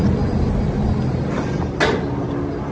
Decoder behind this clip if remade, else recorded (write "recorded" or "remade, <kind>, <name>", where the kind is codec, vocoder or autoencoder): recorded